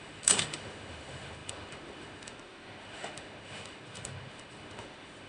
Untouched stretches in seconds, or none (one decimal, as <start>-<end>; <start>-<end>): none